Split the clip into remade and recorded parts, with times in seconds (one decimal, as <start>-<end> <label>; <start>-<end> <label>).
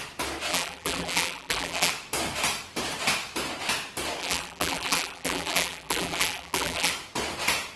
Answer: 0.0-0.5 recorded; 0.5-1.9 remade; 1.9-4.2 recorded; 4.2-6.9 remade; 6.9-7.8 recorded